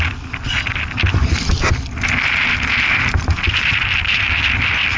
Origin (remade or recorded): recorded